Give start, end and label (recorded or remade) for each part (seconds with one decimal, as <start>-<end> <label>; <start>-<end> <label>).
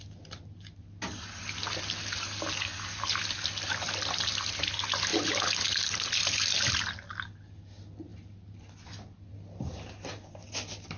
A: 0.0-11.0 recorded